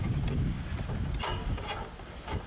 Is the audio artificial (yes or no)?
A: no